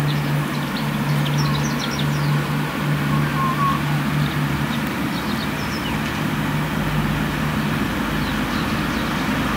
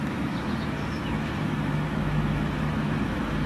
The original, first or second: first